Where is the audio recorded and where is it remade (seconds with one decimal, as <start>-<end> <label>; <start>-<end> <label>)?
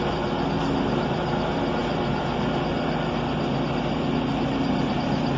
0.0-5.4 recorded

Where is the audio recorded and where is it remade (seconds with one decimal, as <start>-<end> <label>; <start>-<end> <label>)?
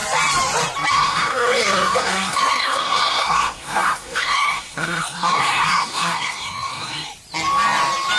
0.0-0.9 recorded; 0.9-7.1 remade; 7.1-8.2 recorded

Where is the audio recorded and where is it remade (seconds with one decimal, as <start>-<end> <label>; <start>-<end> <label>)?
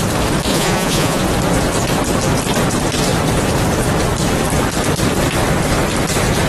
0.0-0.5 recorded; 0.5-1.2 remade; 1.2-6.5 recorded